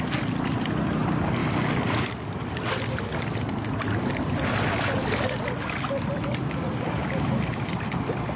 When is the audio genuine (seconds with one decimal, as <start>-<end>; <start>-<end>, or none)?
0.0-8.4